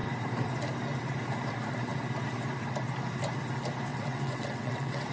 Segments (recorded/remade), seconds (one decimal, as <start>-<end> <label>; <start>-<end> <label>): 0.0-3.9 recorded; 3.9-5.1 remade